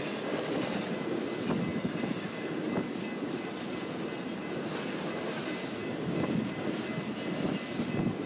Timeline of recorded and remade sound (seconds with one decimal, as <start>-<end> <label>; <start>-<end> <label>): 0.0-8.3 recorded